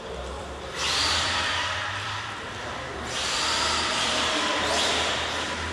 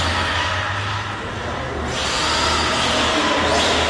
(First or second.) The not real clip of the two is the first